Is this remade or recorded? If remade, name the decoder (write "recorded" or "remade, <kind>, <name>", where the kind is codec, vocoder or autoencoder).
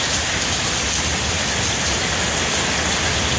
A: recorded